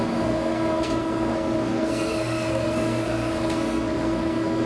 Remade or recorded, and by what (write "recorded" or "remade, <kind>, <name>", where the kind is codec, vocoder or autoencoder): remade, codec, SNAC